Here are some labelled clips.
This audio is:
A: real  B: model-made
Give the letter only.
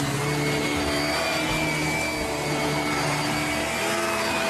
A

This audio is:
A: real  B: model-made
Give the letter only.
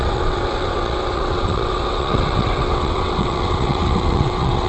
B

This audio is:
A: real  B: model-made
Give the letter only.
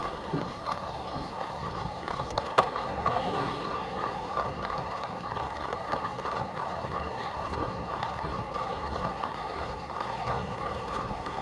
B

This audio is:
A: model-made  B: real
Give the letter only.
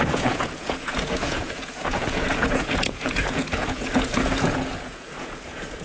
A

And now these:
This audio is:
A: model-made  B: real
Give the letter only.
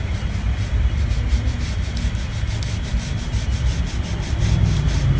B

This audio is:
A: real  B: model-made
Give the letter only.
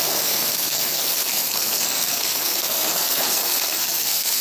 B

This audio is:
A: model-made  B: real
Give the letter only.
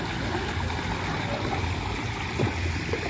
B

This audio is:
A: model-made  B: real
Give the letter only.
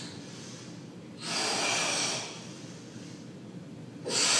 B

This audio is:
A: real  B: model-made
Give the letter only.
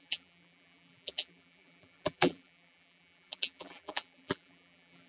B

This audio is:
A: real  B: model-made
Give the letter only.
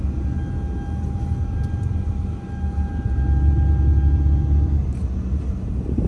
A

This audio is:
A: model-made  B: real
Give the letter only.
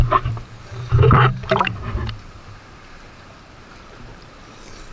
A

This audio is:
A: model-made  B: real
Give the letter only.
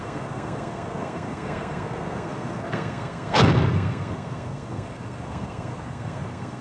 A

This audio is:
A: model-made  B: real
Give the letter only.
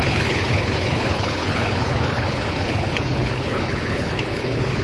A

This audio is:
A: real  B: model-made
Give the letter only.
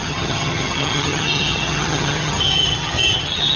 B